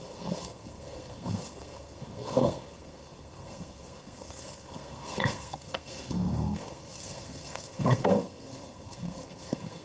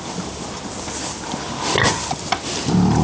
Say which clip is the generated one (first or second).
first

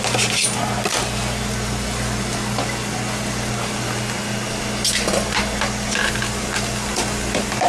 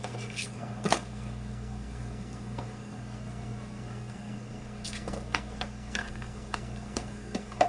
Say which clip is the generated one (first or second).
second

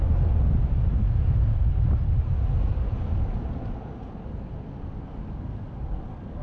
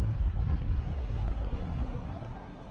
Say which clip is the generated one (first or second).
second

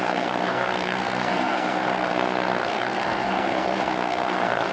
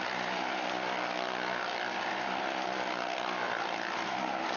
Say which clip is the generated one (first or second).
first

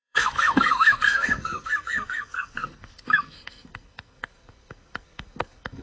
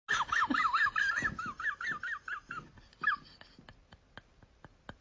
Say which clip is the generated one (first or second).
first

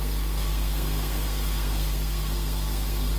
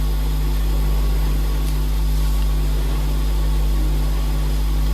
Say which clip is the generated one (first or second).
first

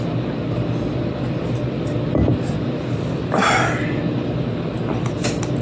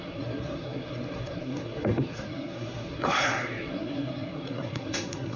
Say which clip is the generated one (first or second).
second